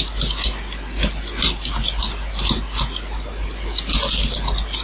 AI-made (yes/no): no